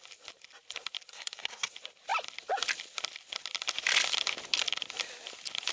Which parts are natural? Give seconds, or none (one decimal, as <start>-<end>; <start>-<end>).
0.0-1.1; 1.7-5.7